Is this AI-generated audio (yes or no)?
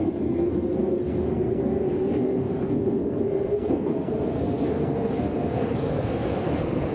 yes